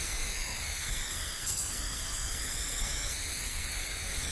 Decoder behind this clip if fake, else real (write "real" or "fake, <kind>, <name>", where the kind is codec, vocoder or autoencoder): fake, codec, SNAC